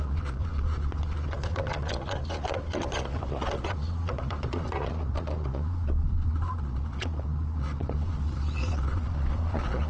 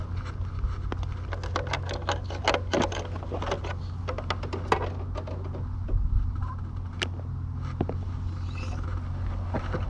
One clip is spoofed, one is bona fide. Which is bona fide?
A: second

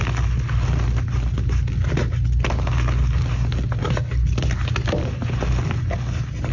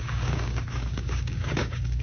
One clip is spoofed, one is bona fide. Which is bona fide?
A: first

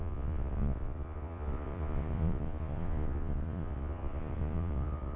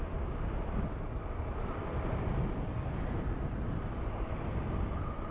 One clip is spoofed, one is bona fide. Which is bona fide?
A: second